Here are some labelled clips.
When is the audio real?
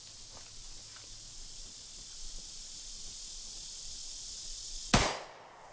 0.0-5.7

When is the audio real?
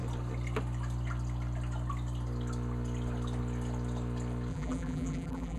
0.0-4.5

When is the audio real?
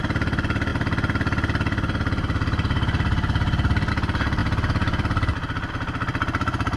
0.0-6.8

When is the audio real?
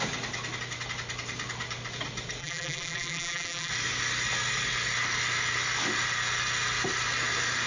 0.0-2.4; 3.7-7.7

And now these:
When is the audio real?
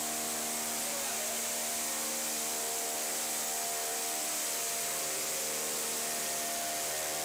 0.0-7.2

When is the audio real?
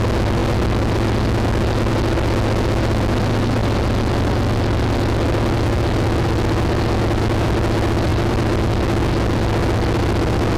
0.0-8.1; 8.6-10.6